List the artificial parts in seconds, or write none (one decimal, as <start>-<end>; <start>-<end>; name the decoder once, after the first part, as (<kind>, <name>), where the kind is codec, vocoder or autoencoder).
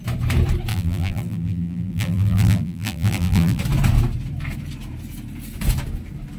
0.7-3.6 (vocoder, BigVGAN v2)